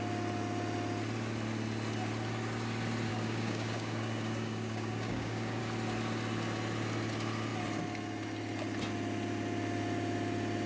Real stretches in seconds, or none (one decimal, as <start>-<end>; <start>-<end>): 0.0-3.1; 5.6-10.7